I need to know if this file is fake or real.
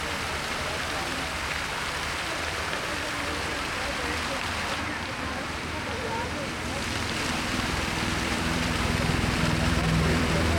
fake